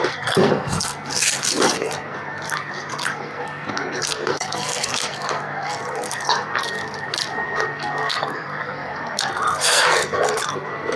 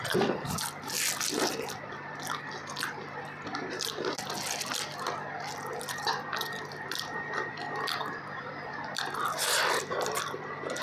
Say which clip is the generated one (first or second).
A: first